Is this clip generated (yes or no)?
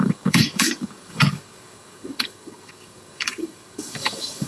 yes